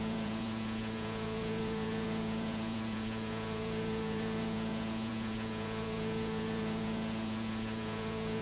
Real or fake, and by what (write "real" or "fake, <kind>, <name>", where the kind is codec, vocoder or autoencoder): fake, vocoder, Vocos